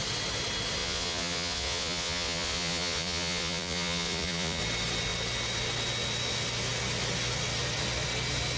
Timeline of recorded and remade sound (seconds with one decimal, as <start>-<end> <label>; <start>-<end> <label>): 0.0-0.8 recorded; 0.8-4.6 remade; 4.6-8.6 recorded